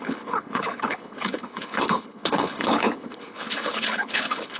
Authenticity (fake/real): fake